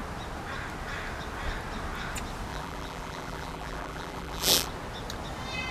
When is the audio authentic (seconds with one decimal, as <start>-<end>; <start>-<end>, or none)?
0.0-2.5; 4.7-5.7